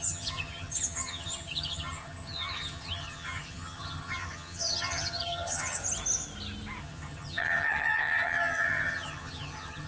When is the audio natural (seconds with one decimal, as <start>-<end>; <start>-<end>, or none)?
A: 5.8-6.8